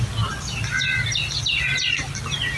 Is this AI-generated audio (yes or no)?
no